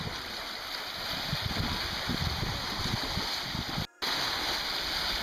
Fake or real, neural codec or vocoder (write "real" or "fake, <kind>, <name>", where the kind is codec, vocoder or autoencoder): real